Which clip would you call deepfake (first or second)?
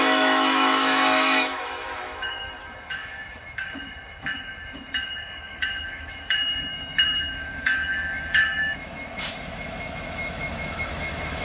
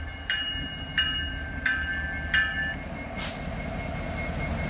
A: first